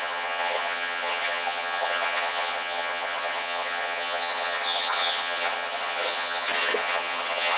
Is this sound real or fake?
fake